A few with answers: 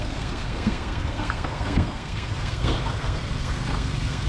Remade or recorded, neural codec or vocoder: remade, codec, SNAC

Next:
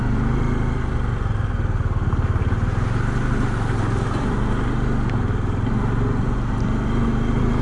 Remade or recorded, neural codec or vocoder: recorded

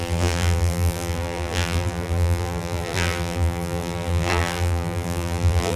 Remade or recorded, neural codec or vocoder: remade, vocoder, BigVGAN v2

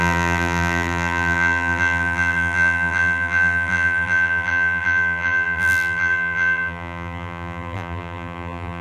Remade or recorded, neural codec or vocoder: remade, vocoder, BigVGAN v2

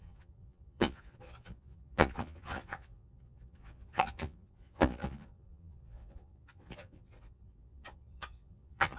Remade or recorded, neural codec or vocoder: remade, vocoder, Vocos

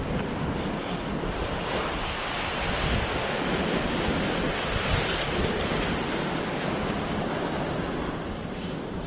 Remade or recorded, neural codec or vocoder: recorded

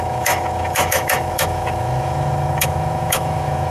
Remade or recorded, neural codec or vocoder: remade, autoencoder, DAC-VAE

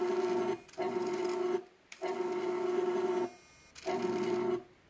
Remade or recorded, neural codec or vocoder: recorded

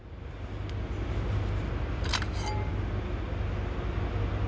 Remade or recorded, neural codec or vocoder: recorded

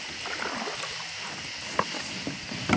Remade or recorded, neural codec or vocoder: recorded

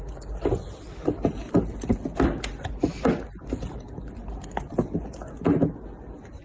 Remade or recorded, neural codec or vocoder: recorded